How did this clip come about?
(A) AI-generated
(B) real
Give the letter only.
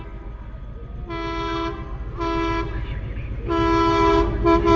B